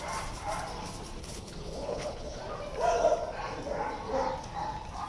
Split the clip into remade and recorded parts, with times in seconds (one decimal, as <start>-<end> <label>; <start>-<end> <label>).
0.0-1.2 recorded; 1.2-2.4 remade; 2.4-5.1 recorded